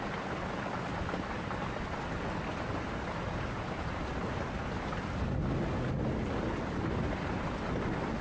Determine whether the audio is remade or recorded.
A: recorded